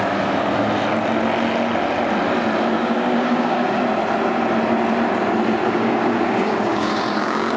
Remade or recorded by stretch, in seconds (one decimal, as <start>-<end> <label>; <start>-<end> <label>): 0.0-2.8 recorded; 2.8-3.8 remade; 3.8-5.6 recorded; 5.6-7.6 remade